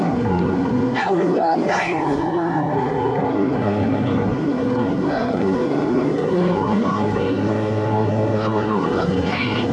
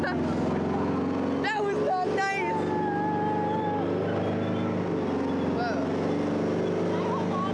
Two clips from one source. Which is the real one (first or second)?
second